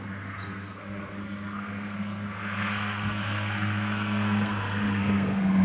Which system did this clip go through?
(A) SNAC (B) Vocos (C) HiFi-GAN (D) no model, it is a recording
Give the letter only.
A